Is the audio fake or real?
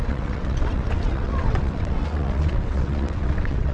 fake